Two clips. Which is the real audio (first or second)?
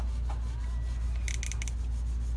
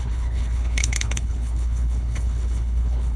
first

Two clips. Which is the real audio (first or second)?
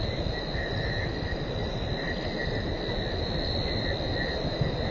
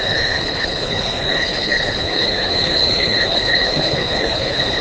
first